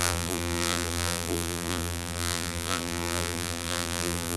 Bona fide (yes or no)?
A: no